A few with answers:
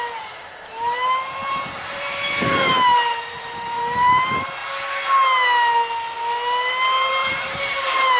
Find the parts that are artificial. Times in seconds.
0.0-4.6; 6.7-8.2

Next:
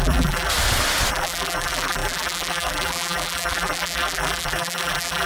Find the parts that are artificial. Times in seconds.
0.0-0.5; 1.1-5.3

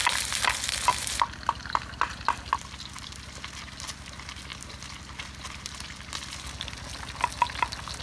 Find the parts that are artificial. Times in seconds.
none

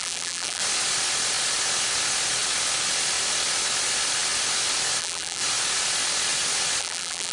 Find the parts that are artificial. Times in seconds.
0.0-0.6; 5.0-5.4; 6.8-7.3